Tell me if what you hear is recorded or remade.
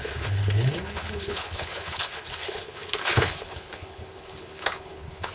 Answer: remade